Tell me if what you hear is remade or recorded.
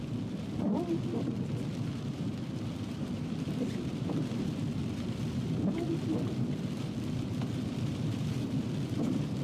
remade